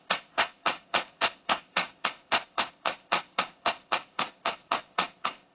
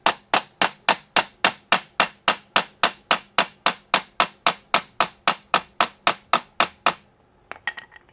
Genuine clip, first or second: second